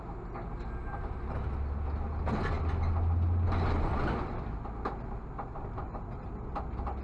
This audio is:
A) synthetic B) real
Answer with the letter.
B